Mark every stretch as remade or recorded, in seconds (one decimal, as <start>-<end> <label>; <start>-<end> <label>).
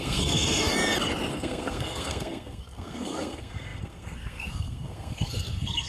0.0-0.7 remade; 0.7-1.3 recorded; 1.3-5.9 remade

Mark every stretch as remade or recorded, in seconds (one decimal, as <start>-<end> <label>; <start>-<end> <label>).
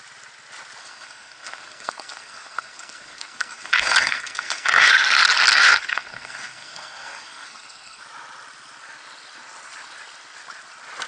0.0-0.8 recorded; 0.8-4.9 remade; 4.9-5.5 recorded; 5.5-8.0 remade; 8.0-11.1 recorded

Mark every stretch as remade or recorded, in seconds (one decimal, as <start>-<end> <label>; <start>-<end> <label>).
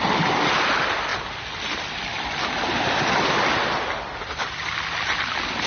0.0-5.7 recorded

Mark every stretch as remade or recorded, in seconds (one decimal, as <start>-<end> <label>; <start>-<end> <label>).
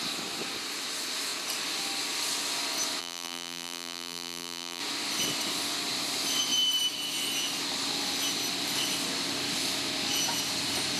0.0-3.0 recorded; 3.0-4.8 remade; 4.8-11.0 recorded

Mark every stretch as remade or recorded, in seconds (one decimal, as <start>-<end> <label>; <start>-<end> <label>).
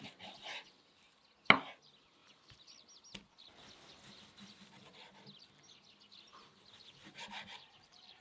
0.0-6.3 recorded; 6.3-8.2 remade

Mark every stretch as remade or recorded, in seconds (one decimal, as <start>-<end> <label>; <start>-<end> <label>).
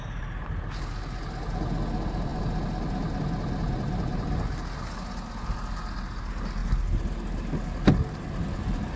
0.0-9.0 recorded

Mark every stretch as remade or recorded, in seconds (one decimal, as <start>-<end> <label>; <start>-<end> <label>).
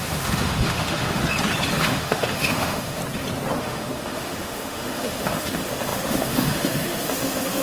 0.0-1.2 remade; 1.2-1.8 recorded; 1.8-3.0 remade; 3.0-3.6 recorded; 3.6-7.6 remade